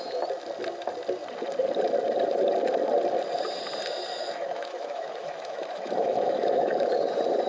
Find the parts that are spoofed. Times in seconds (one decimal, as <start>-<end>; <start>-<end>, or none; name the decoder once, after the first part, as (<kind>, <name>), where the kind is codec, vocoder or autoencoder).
4.1-7.0 (autoencoder, DAC-VAE)